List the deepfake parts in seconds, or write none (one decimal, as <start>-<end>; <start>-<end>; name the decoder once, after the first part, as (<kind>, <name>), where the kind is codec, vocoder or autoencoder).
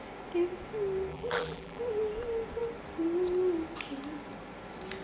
1.1-1.8 (vocoder, BigVGAN v2)